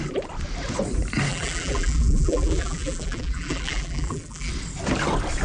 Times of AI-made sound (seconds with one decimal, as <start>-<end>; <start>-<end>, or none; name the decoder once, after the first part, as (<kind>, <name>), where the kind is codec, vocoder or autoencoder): 1.3-4.5 (vocoder, BigVGAN v2)